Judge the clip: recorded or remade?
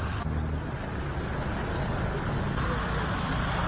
recorded